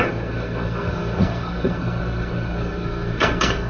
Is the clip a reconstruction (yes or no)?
yes